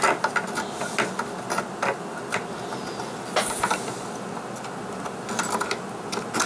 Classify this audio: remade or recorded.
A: recorded